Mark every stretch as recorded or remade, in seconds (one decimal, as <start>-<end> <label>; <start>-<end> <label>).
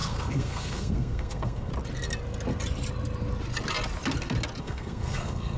0.0-1.7 remade; 1.7-4.6 recorded; 4.6-5.6 remade